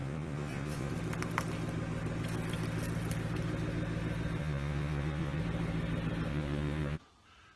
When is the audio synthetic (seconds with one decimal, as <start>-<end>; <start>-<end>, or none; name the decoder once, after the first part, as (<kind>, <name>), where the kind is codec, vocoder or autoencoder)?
0.0-0.9 (vocoder, Vocos); 4.4-5.4; 6.3-7.0